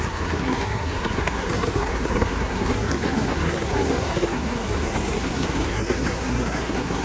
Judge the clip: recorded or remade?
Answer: remade